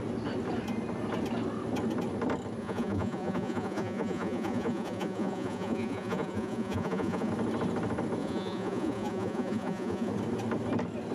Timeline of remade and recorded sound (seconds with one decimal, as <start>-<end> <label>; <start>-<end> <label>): 0.0-2.6 recorded; 2.6-7.3 remade; 7.3-8.2 recorded; 8.2-10.1 remade; 10.1-11.1 recorded